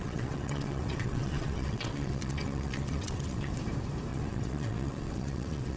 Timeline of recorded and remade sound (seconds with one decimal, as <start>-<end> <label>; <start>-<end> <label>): 0.0-3.5 remade; 3.5-4.1 recorded; 4.1-5.8 remade